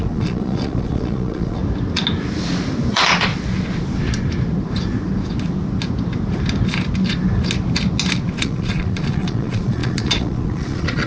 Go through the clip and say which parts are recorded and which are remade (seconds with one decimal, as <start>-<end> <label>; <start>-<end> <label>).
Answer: 0.0-1.6 remade; 1.6-2.9 recorded; 2.9-3.3 remade; 3.3-8.4 recorded; 8.4-11.1 remade